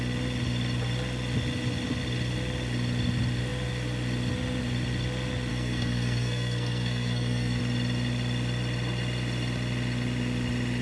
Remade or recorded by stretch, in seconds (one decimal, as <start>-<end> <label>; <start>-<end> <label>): 0.0-5.5 recorded; 5.5-7.6 remade; 7.6-10.8 recorded

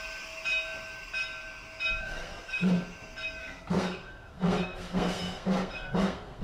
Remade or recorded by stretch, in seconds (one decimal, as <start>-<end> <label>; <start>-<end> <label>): 0.0-2.0 recorded; 2.0-2.7 remade; 2.7-3.4 recorded; 3.4-6.4 remade